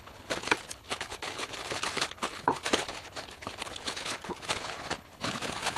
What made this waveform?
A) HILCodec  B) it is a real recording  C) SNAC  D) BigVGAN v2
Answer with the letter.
A